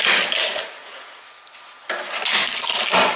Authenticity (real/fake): real